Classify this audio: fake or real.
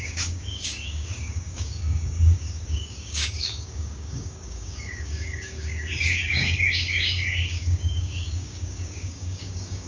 fake